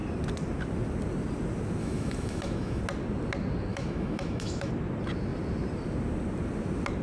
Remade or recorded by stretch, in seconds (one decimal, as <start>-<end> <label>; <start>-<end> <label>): 0.0-1.8 recorded; 1.8-2.8 remade; 2.8-3.7 recorded; 3.7-4.7 remade; 4.7-7.0 recorded